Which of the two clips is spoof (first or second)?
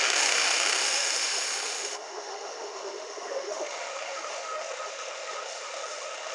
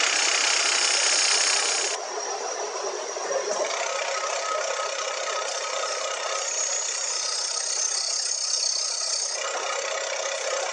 first